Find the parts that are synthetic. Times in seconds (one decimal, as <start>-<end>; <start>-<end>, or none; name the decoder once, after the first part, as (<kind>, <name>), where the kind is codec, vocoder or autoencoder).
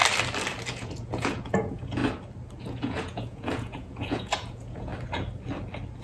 0.7-2.0 (vocoder, Vocos); 2.6-4.9